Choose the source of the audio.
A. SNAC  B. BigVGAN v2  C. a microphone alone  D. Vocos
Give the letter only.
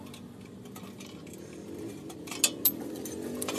C